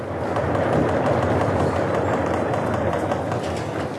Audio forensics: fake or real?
real